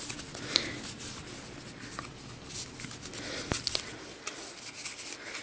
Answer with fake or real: real